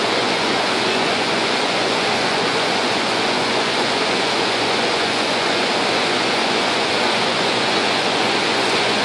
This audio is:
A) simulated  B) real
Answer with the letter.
A